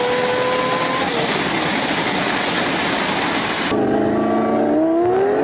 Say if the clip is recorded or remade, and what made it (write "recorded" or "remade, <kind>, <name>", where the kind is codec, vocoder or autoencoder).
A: recorded